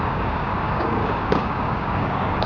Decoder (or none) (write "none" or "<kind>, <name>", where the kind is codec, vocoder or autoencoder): codec, DAC